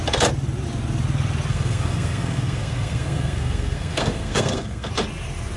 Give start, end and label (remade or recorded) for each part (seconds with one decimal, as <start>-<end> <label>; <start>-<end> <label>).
0.0-1.5 recorded; 1.5-4.9 remade; 4.9-5.6 recorded